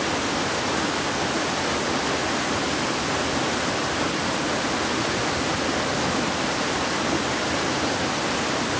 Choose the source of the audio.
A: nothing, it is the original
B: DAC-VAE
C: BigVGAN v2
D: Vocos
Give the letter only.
A